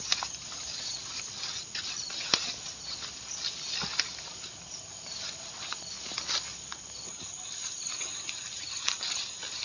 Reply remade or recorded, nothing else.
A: recorded